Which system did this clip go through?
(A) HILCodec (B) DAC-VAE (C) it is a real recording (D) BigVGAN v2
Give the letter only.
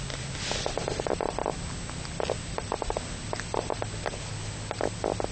C